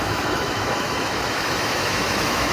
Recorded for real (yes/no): no